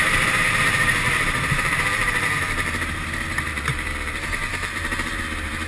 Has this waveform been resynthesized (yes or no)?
yes